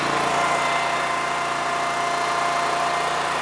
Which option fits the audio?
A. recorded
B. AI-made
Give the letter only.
A